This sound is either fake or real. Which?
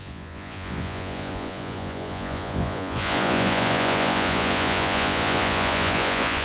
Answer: fake